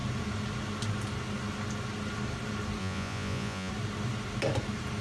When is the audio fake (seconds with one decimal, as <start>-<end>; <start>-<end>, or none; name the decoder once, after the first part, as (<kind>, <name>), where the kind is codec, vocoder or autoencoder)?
2.8-3.7 (vocoder, Vocos)